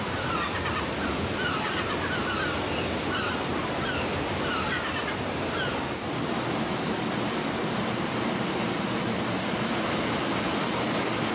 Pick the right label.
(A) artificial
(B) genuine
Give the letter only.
B